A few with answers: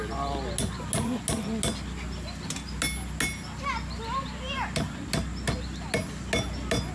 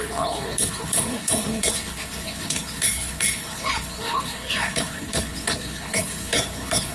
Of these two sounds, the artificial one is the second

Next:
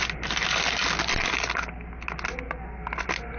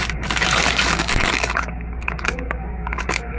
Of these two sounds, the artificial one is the second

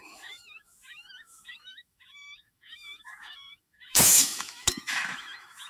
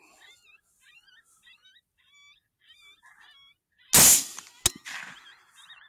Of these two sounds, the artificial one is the first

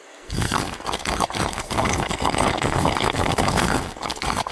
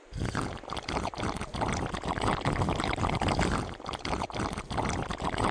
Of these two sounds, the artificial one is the first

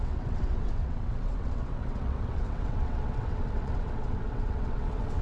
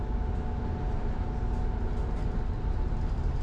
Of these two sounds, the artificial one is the first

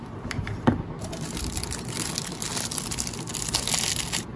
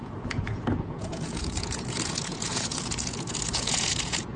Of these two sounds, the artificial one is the second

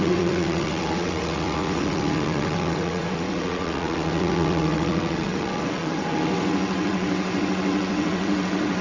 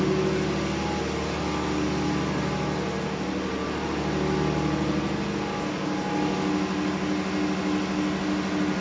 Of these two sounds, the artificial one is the first